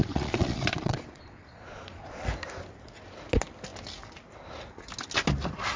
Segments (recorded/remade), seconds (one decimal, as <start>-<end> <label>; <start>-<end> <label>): 0.0-2.2 remade; 2.2-5.8 recorded